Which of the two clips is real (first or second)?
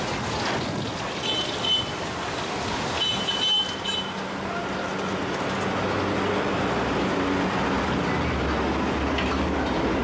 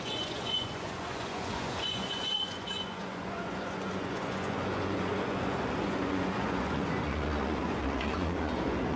first